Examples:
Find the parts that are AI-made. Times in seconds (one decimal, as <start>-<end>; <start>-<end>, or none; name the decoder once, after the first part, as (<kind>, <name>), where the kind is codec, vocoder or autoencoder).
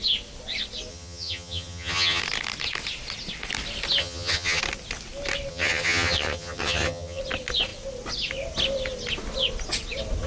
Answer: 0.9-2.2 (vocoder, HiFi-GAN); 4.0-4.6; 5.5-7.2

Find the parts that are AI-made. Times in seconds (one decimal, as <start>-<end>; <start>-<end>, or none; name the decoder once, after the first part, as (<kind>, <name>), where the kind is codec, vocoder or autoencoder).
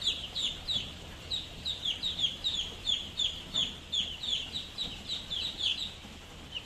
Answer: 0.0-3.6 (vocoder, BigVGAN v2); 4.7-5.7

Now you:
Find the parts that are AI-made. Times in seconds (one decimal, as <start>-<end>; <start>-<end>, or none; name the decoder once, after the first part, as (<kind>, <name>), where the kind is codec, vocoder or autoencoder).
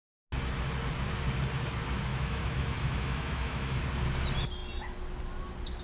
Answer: 2.1-3.8 (autoencoder, DAC-VAE)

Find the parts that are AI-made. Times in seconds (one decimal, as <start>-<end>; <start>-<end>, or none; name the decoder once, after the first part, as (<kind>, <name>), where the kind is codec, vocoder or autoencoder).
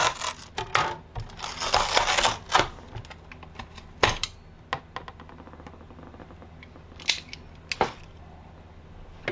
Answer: none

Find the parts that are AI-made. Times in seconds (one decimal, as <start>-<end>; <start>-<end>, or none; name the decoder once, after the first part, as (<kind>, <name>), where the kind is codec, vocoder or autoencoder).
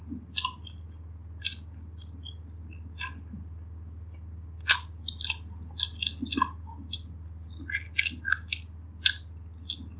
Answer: none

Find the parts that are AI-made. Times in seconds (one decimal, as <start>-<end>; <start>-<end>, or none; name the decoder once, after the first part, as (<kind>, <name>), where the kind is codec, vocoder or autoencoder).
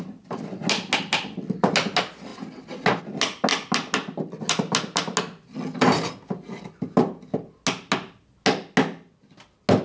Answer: none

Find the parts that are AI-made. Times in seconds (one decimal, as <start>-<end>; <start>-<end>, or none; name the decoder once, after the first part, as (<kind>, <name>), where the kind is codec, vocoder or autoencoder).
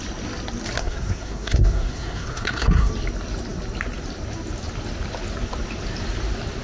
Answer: 0.8-2.9 (codec, SNAC)